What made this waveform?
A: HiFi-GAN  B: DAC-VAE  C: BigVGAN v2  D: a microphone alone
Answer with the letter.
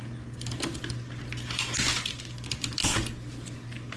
D